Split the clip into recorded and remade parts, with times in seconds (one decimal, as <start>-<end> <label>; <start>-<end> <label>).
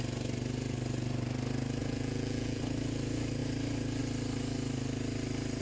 0.0-1.8 recorded; 1.8-2.6 remade; 2.6-5.6 recorded